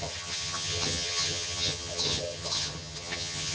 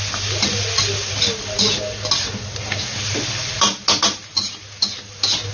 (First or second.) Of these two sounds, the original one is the second